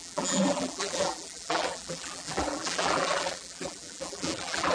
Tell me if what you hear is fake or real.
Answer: fake